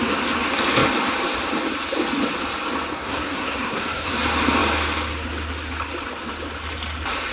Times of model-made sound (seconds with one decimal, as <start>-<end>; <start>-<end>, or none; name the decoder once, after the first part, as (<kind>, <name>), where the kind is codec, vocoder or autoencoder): 2.9-4.1 (codec, SNAC)